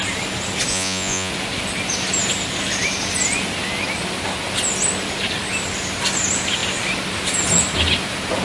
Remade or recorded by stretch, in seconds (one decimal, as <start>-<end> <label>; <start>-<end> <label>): 0.0-0.7 recorded; 0.7-1.3 remade; 1.3-8.4 recorded